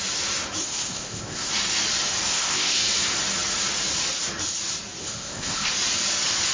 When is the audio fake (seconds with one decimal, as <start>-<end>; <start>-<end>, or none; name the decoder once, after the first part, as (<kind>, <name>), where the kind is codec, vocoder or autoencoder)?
0.6-1.5 (codec, ZipCodec); 2.3-2.8; 5.0-5.7